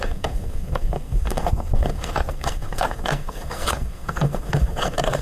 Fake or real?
fake